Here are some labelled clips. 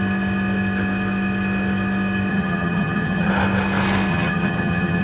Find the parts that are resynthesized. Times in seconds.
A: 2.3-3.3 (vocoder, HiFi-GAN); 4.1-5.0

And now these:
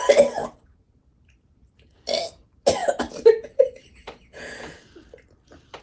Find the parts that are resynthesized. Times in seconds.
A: 0.4-1.1 (vocoder, Vocos); 2.8-4.8

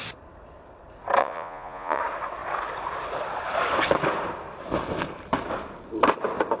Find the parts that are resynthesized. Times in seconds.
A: 1.2-2.0 (vocoder, Vocos)

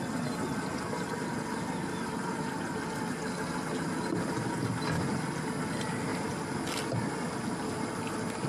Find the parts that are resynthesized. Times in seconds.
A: none

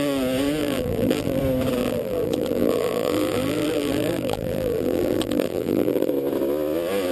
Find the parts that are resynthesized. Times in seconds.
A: 0.6-1.4 (vocoder, BigVGAN v2); 1.8-6.1

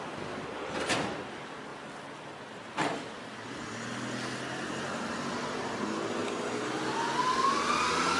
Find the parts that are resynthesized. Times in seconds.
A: none

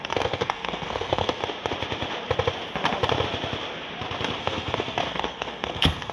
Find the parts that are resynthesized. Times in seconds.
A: 0.0-1.4 (codec, SNAC); 4.4-6.1